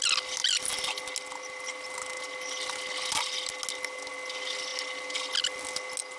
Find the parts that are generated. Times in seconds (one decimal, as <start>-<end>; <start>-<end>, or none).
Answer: none